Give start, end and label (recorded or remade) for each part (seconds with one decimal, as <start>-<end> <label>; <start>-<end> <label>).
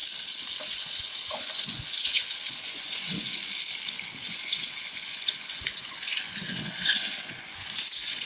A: 0.0-0.6 recorded; 0.6-3.4 remade; 3.4-4.2 recorded; 4.2-8.3 remade